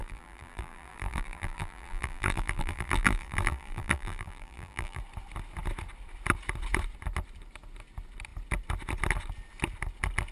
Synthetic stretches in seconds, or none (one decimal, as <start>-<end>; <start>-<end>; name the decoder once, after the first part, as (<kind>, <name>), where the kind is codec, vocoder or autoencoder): 0.0-5.0 (vocoder, BigVGAN v2)